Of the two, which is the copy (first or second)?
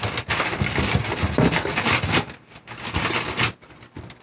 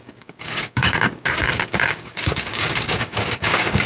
second